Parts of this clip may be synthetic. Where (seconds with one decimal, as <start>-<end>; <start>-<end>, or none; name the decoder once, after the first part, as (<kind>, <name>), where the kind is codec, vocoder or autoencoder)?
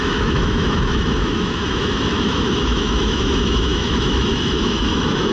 0.0-5.3 (autoencoder, DAC-VAE)